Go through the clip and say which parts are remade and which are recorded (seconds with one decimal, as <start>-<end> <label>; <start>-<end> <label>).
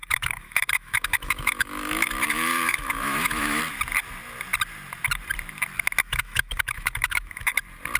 0.0-3.6 remade; 3.6-6.0 recorded; 6.0-7.5 remade; 7.5-8.0 recorded